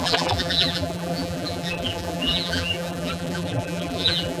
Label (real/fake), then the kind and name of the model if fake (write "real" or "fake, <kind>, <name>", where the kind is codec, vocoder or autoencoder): fake, vocoder, BigVGAN v2